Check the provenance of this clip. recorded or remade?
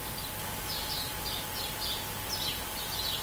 recorded